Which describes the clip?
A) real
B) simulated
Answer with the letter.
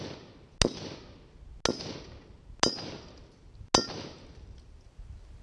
A